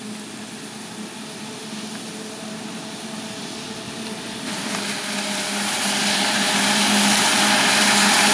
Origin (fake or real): real